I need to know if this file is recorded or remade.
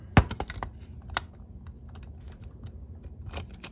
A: recorded